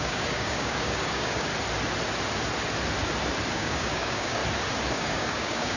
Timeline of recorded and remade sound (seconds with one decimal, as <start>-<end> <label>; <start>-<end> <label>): 0.0-1.5 remade; 1.5-3.5 recorded; 3.5-4.4 remade; 4.4-4.9 recorded; 4.9-5.8 remade